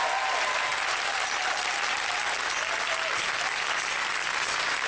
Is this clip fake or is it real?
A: real